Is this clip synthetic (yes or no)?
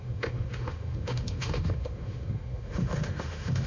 yes